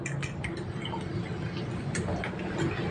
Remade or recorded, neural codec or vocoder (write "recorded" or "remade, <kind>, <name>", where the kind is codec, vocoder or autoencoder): recorded